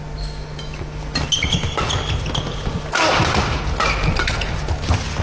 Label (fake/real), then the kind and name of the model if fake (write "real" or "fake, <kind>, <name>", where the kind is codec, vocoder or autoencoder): real